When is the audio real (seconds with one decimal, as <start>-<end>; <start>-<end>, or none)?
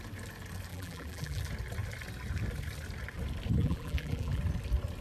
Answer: 0.0-0.7; 1.4-3.6; 4.4-5.0